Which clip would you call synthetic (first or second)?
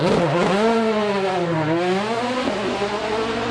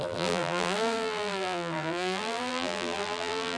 second